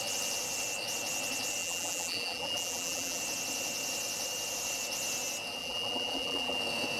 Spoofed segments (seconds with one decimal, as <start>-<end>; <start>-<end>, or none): 1.6-3.2; 5.6-6.6